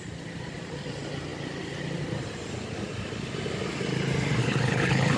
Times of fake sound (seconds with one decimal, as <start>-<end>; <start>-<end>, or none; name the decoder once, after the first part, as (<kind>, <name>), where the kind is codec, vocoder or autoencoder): 4.4-5.2 (codec, HILCodec)

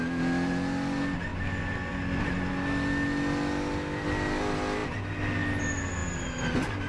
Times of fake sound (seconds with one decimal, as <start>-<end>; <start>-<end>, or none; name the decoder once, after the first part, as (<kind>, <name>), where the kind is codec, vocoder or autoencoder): none

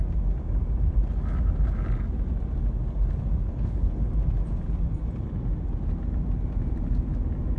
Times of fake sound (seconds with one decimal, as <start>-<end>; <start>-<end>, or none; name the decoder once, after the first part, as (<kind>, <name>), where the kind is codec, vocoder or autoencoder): 3.5-4.1 (codec, HILCodec)

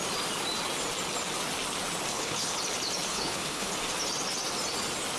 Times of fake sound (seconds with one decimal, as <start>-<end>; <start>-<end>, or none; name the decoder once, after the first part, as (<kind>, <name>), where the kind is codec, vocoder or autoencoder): 2.1-2.6 (codec, HILCodec); 3.1-3.7